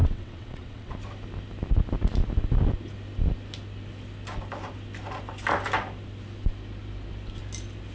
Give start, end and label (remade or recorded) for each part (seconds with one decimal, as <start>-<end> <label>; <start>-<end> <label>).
0.0-0.9 remade; 0.9-7.9 recorded